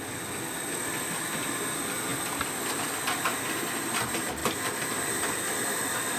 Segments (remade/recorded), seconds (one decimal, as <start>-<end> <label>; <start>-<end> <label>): 0.0-6.2 recorded